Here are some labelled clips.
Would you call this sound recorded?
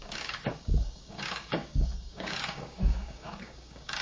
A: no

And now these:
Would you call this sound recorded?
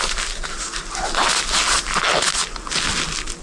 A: yes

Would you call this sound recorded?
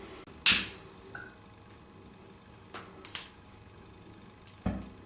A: yes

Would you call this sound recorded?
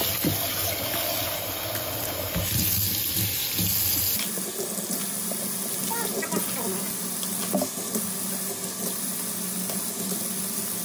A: yes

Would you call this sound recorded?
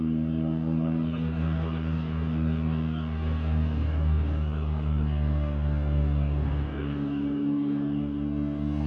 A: no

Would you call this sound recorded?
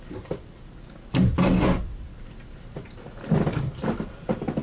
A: yes